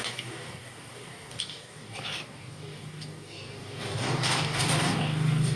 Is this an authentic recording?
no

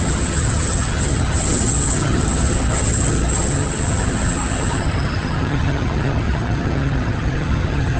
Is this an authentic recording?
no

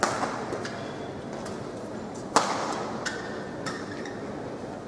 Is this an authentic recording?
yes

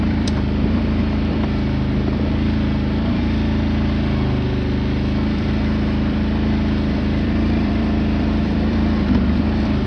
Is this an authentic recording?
no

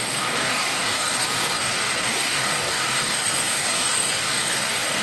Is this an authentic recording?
no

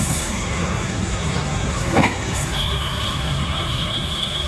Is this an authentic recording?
no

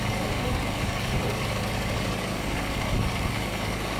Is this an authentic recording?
no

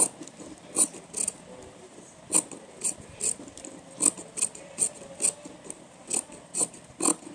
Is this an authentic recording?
yes